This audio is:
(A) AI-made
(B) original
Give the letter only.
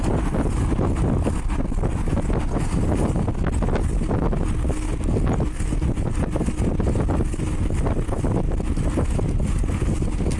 B